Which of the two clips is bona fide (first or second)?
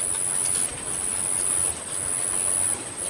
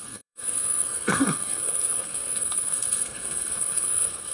first